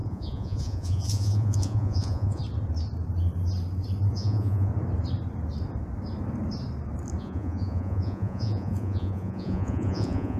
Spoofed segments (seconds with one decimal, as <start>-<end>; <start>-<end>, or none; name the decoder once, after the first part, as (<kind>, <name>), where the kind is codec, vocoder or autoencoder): 0.0-2.4 (vocoder, Vocos); 4.1-4.7; 7.2-10.4